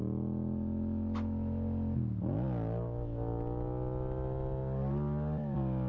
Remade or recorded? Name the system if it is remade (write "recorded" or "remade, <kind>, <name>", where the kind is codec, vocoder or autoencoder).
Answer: recorded